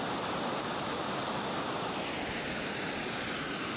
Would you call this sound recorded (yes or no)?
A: yes